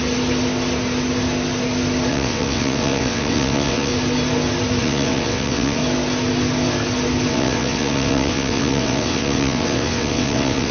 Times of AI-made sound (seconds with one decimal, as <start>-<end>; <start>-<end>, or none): 2.1-3.9; 4.8-5.8; 7.3-10.7